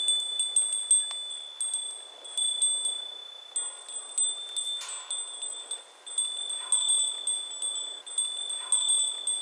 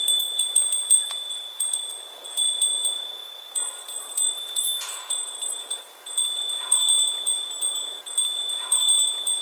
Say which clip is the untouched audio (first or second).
first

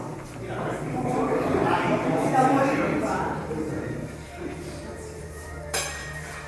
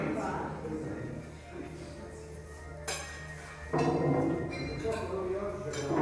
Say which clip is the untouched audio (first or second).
second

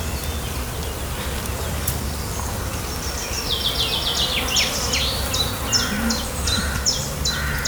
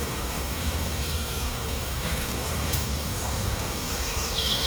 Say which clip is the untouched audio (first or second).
first